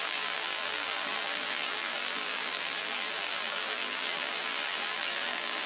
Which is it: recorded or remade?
remade